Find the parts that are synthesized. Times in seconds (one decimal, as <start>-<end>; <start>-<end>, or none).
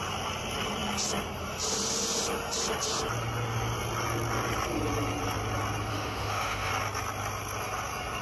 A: 5.9-6.7